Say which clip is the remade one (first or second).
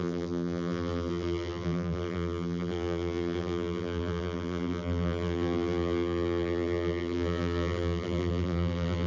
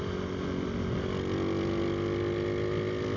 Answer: first